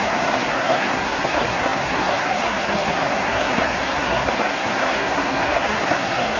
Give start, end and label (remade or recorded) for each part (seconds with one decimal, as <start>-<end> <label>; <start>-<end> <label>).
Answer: 0.0-6.4 remade